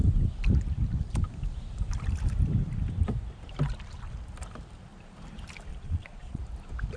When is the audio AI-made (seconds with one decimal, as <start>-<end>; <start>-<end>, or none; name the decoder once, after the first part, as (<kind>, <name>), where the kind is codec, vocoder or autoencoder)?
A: 5.7-6.4 (vocoder, Vocos)